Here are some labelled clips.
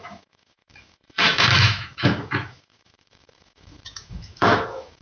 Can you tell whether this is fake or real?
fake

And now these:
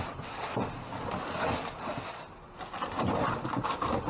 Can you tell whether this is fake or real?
real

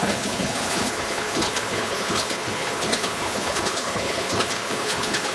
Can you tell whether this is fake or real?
fake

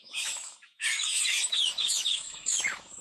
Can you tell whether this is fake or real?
fake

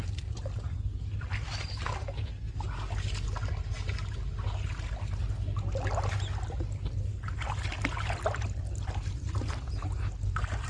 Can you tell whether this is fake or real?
real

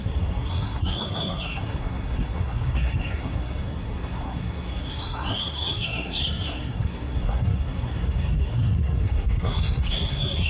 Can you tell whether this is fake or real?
fake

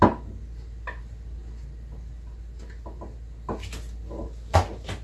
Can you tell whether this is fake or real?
real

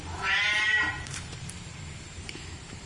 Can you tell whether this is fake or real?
fake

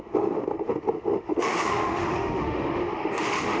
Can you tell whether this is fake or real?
fake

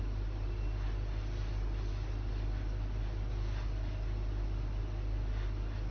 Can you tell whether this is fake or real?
real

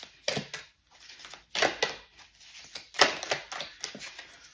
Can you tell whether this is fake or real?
real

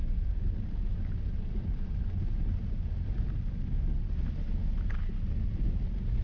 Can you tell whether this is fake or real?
real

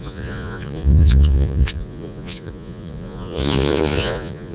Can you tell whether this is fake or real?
fake